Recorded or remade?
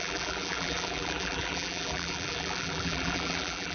remade